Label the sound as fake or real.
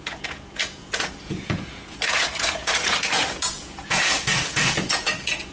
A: fake